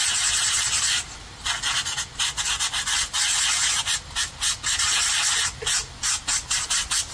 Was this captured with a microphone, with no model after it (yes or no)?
yes